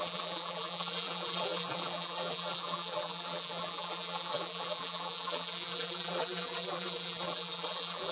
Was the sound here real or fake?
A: fake